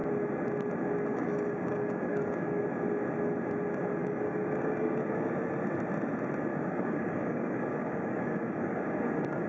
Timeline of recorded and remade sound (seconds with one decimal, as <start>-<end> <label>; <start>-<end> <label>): 0.0-1.1 recorded; 1.1-2.6 remade; 2.6-4.0 recorded; 4.0-5.3 remade; 5.3-6.5 recorded; 6.5-9.5 remade